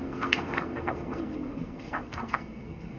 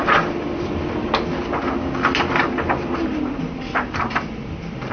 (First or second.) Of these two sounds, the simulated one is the first